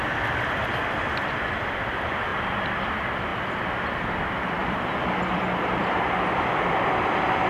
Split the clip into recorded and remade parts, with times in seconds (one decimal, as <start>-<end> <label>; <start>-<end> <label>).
0.0-3.3 remade; 3.3-4.5 recorded; 4.5-7.5 remade